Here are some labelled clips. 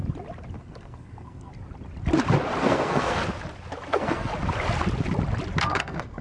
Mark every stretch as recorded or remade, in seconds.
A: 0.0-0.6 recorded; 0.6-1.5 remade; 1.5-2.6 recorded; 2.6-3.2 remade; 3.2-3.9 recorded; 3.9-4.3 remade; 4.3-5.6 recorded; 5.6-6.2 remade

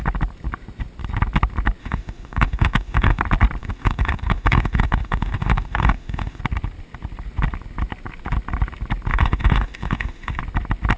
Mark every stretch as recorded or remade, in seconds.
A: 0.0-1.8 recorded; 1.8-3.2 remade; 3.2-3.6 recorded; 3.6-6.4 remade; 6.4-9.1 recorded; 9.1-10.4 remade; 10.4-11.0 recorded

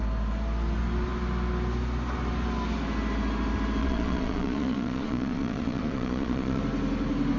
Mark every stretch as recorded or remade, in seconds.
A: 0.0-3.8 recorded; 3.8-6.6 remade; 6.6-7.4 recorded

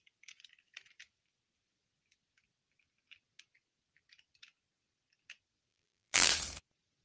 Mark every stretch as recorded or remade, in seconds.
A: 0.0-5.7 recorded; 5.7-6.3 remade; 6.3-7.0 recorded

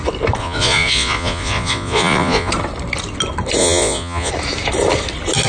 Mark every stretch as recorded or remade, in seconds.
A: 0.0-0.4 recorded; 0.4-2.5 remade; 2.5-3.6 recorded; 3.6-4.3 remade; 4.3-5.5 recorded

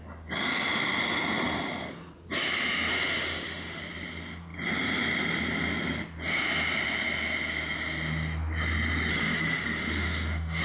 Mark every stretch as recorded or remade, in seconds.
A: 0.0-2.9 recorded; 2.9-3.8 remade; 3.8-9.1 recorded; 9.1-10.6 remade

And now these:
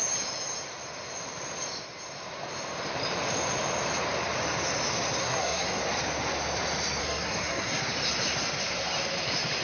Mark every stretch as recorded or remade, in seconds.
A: 0.0-5.2 recorded; 5.2-5.8 remade; 5.8-7.0 recorded; 7.0-7.8 remade; 7.8-9.6 recorded

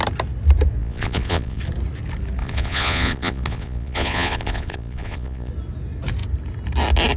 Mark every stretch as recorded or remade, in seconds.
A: 0.0-0.8 recorded; 0.8-1.6 remade; 1.6-2.4 recorded; 2.4-5.5 remade; 5.5-7.2 recorded